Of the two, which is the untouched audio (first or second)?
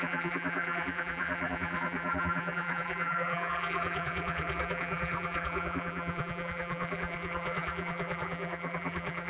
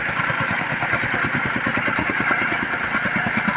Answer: second